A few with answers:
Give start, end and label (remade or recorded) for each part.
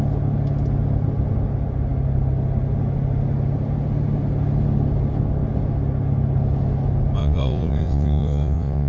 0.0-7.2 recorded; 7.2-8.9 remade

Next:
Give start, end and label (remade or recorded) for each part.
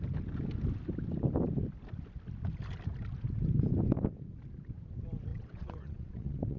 0.0-5.3 recorded; 5.3-6.6 remade